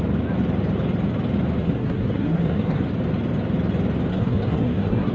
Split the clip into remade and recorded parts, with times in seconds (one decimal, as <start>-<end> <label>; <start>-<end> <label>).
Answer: 0.0-1.6 recorded; 1.6-2.8 remade; 2.8-4.1 recorded; 4.1-5.1 remade